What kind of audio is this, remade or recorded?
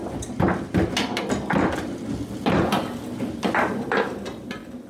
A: recorded